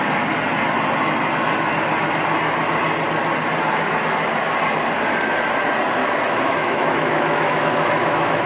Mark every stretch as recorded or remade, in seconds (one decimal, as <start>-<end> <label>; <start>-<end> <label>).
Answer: 0.0-6.0 recorded; 6.0-8.5 remade